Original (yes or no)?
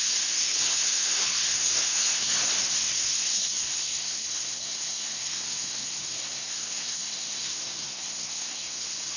no